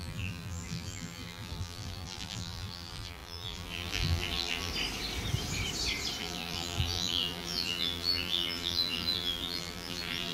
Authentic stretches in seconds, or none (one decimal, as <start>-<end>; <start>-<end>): 4.7-6.2